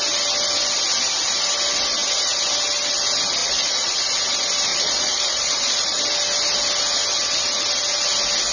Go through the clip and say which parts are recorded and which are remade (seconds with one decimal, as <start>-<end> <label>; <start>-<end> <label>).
0.0-3.4 recorded; 3.4-4.0 remade; 4.0-4.7 recorded; 4.7-6.0 remade; 6.0-8.5 recorded